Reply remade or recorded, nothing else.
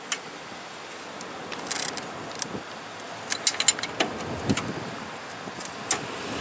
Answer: recorded